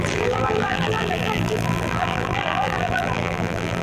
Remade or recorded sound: remade